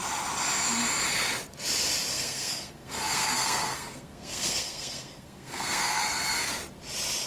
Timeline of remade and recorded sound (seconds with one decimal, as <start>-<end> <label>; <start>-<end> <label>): 0.0-2.1 recorded; 2.1-6.5 remade; 6.5-7.3 recorded